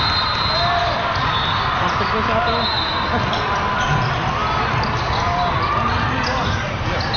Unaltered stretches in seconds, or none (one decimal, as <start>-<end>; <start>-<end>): 0.0-7.2